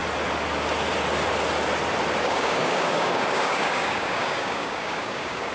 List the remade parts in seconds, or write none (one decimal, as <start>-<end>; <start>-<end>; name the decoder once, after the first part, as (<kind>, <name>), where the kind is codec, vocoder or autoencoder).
2.2-5.5 (codec, DAC)